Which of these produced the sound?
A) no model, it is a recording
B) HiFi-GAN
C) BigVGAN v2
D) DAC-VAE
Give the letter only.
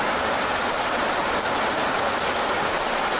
A